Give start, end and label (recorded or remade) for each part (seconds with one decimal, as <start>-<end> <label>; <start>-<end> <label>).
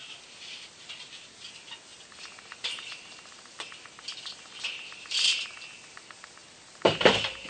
0.0-7.5 recorded